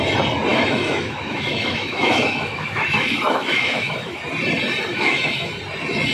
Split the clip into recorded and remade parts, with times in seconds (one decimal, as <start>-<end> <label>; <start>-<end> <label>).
0.0-0.5 recorded; 0.5-4.2 remade; 4.2-4.9 recorded; 4.9-5.5 remade; 5.5-6.1 recorded